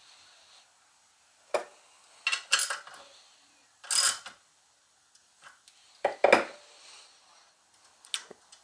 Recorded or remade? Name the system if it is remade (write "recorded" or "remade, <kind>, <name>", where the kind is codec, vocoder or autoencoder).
recorded